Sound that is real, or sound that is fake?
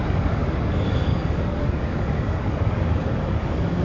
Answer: fake